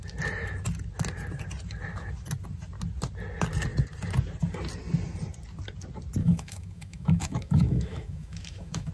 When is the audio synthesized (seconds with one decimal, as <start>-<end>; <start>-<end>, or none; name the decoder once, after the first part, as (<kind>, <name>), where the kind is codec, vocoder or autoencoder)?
6.2-8.9 (autoencoder, DAC-VAE)